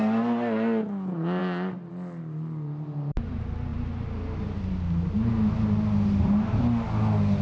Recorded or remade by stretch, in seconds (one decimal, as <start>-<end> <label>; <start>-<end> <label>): 0.0-7.4 recorded